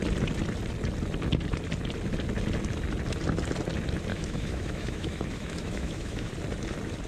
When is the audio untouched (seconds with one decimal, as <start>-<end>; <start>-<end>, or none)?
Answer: 0.0-4.1; 6.3-7.1